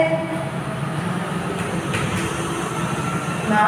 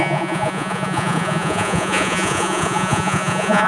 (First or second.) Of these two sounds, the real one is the first